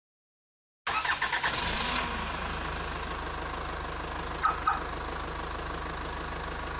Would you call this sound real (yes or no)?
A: yes